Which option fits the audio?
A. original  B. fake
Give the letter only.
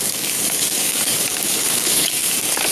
B